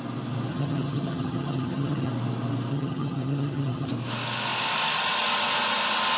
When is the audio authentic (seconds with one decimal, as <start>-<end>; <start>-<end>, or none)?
0.0-0.5; 2.1-2.7; 3.9-6.2